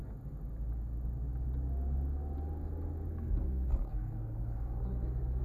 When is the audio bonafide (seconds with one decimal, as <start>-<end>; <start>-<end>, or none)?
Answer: 0.0-3.1